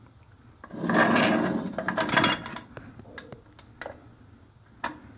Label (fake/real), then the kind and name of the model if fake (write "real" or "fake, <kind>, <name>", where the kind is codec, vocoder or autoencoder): real